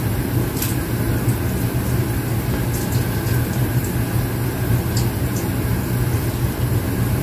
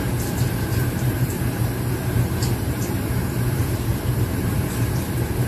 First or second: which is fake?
second